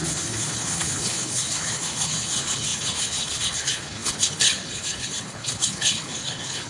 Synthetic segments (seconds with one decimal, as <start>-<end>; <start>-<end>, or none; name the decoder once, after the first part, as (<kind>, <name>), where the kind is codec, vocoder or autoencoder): 0.0-6.7 (codec, HILCodec)